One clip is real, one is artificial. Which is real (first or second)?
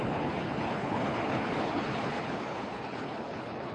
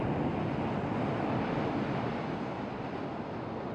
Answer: second